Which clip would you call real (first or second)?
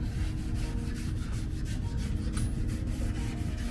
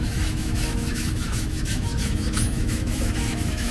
first